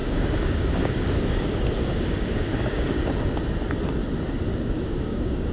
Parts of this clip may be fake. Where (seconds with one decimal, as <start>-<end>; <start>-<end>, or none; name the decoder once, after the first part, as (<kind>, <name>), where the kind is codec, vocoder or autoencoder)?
0.0-3.1 (codec, DAC); 4.5-5.5